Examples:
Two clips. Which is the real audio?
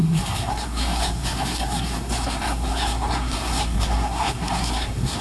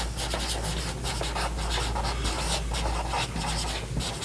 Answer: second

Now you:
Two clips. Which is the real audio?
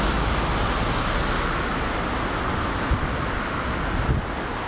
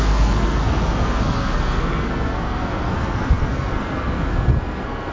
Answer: first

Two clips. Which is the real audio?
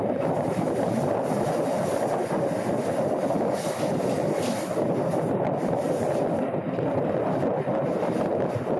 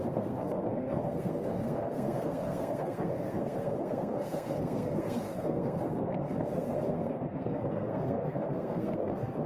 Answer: first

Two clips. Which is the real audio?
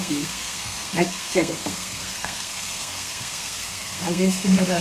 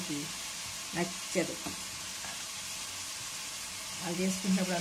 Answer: second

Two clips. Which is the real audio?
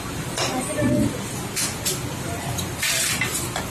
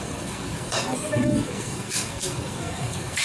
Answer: first